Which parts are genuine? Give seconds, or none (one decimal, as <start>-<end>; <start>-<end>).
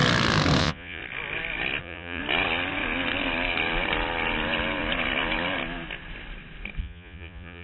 0.0-0.6; 1.0-1.8; 2.2-6.8